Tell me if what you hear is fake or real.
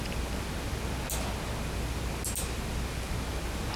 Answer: real